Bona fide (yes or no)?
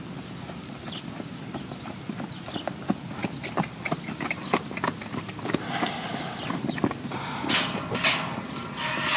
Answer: yes